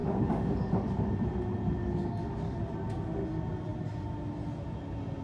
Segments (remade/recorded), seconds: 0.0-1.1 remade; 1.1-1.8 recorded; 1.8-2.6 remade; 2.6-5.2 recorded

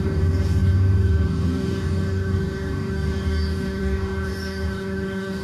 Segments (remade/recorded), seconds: 0.0-5.4 remade

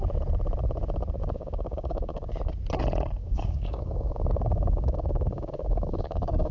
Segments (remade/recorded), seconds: 0.0-1.2 recorded; 1.2-2.4 remade; 2.4-3.2 recorded; 3.2-6.5 remade

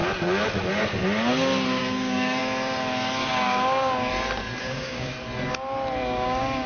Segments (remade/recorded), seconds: 0.0-1.8 recorded; 1.8-2.4 remade; 2.4-3.3 recorded; 3.3-4.1 remade; 4.1-4.6 recorded; 4.6-5.1 remade; 5.1-6.0 recorded; 6.0-6.7 remade